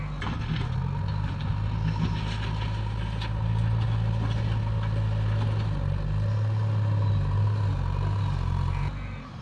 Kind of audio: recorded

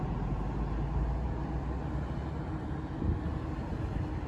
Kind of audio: recorded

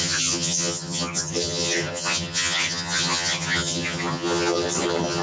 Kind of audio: remade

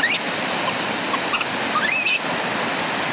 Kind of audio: remade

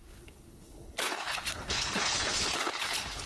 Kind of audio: remade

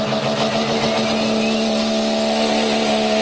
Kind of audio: recorded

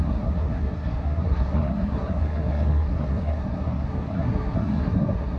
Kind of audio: remade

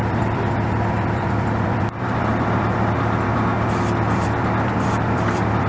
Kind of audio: remade